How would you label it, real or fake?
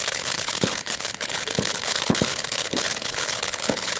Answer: fake